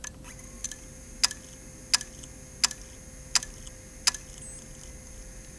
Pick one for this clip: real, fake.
real